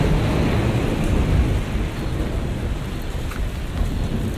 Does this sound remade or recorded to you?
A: recorded